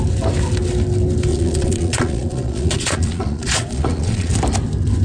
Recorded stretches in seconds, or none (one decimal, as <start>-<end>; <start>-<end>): 0.0-1.3; 4.3-5.0